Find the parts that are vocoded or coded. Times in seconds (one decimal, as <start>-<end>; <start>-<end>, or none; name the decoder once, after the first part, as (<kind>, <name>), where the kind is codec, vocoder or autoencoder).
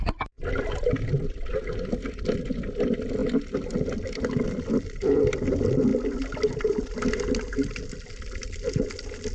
none